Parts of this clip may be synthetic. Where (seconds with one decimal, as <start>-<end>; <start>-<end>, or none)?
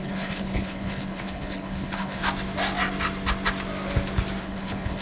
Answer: 0.0-2.2; 4.4-5.0